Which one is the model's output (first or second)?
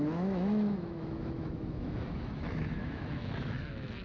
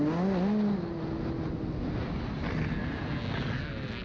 first